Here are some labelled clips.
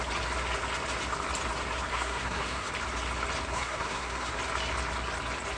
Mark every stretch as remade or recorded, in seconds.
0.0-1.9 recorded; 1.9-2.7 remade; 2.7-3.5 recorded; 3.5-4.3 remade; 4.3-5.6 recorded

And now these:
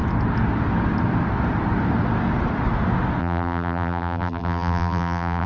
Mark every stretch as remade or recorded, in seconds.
0.0-3.2 recorded; 3.2-5.5 remade